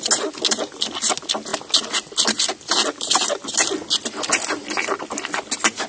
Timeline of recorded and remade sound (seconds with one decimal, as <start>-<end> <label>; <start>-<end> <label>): 0.0-5.9 recorded